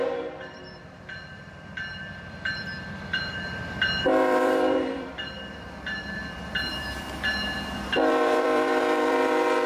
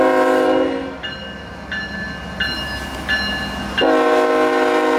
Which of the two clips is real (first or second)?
second